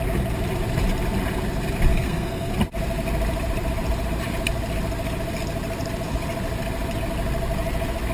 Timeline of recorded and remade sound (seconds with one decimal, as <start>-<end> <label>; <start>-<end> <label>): 0.0-1.9 recorded; 1.9-2.5 remade; 2.5-8.1 recorded